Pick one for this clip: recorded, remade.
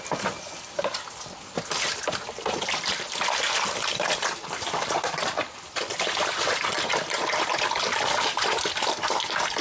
recorded